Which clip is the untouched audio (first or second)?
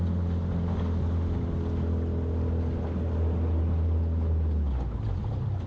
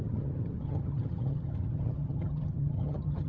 first